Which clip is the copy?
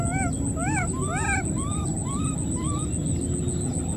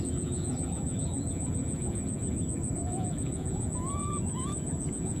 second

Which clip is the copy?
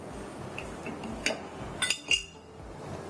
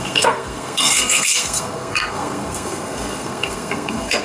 second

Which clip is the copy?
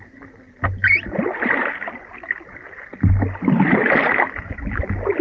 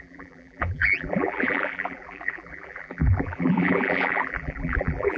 second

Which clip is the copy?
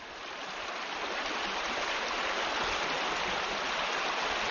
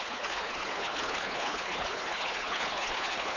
second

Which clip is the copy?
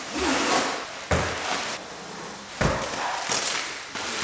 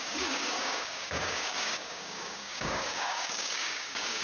second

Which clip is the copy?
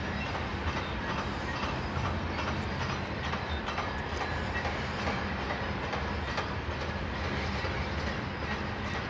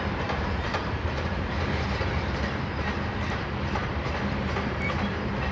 second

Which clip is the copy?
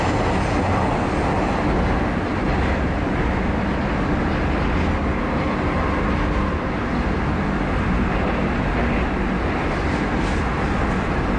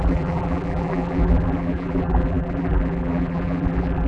second